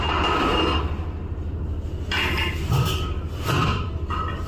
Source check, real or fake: real